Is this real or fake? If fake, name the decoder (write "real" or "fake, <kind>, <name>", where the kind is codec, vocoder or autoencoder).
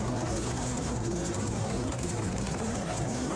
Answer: fake, codec, SNAC